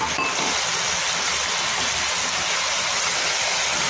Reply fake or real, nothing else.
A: real